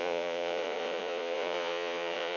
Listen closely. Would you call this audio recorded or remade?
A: remade